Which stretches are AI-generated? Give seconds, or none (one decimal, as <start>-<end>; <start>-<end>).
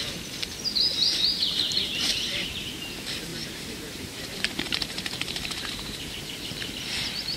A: 0.9-2.9; 3.3-6.0